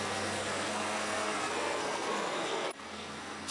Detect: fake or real fake